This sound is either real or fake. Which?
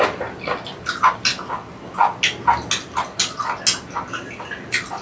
real